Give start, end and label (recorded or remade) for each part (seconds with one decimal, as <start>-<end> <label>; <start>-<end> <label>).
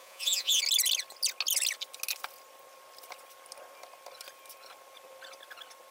0.0-0.6 remade; 0.6-5.9 recorded